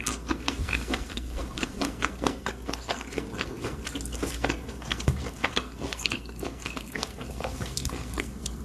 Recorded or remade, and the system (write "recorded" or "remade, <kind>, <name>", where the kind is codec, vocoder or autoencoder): remade, codec, SNAC